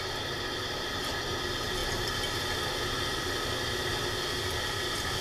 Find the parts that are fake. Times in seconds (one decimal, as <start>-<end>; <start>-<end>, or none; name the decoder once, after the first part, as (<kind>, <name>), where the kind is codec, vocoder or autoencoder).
none